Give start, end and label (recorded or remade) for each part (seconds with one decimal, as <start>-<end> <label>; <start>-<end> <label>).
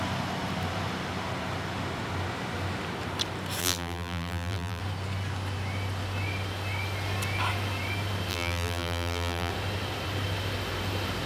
0.0-3.6 recorded; 3.6-4.8 remade; 4.8-8.3 recorded; 8.3-9.5 remade; 9.5-11.3 recorded